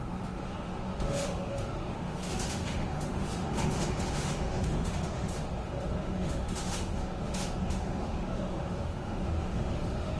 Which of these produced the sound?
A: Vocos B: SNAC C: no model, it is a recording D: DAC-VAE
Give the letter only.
D